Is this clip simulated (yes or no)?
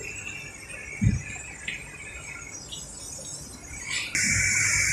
yes